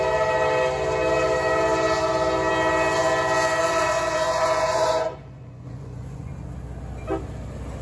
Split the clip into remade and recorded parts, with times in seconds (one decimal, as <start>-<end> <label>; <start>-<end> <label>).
0.0-3.6 recorded; 3.6-6.3 remade; 6.3-7.8 recorded